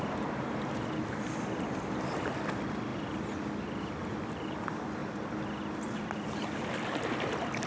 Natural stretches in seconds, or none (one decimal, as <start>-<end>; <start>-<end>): 5.0-6.0